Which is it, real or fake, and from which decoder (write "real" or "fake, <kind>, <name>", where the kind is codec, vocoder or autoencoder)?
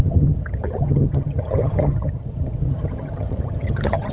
fake, vocoder, HiFi-GAN